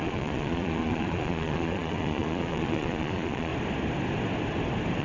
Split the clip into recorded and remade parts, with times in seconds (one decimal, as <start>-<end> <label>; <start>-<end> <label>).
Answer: 0.0-3.5 remade; 3.5-5.0 recorded